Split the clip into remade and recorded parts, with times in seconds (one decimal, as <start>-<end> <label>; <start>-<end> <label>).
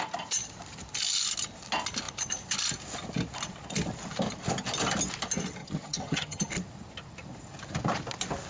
0.0-5.6 recorded; 5.6-6.5 remade; 6.5-8.5 recorded